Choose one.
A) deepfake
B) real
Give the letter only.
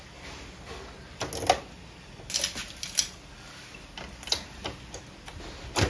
B